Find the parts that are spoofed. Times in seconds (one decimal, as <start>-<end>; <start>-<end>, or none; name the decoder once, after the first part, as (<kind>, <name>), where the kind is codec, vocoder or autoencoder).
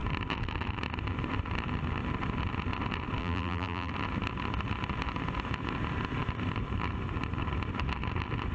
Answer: 3.2-3.9 (vocoder, BigVGAN v2)